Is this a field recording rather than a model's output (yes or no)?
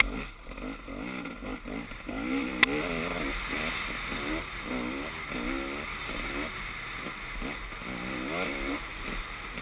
yes